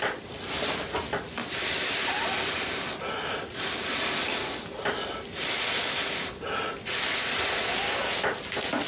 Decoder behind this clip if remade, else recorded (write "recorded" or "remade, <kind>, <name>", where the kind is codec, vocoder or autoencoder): recorded